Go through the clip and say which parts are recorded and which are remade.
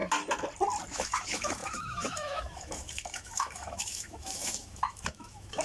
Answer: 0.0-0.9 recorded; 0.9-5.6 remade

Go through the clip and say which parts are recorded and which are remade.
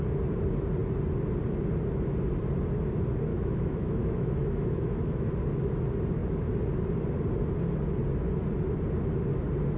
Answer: 0.0-3.3 recorded; 3.3-5.3 remade; 5.3-9.8 recorded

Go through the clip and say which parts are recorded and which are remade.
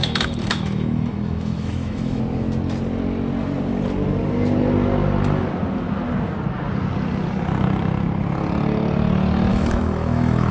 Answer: 0.0-2.2 remade; 2.2-9.5 recorded; 9.5-10.5 remade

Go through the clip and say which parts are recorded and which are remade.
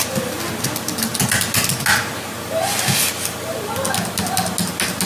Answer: 0.0-5.1 recorded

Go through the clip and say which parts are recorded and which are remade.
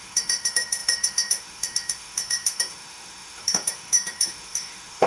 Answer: 0.0-5.1 remade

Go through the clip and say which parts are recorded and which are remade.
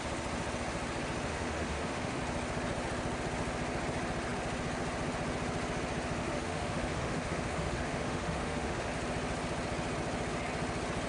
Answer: 0.0-1.3 recorded; 1.3-2.2 remade; 2.2-6.2 recorded; 6.2-8.9 remade; 8.9-11.1 recorded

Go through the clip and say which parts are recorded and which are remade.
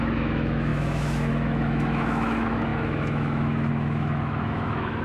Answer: 0.0-5.0 remade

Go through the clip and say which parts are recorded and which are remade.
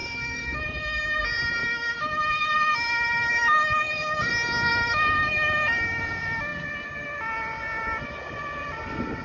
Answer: 0.0-1.0 remade; 1.0-1.6 recorded; 1.6-4.3 remade; 4.3-4.7 recorded; 4.7-6.0 remade; 6.0-9.2 recorded